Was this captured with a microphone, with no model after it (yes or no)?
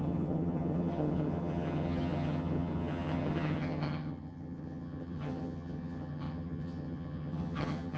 no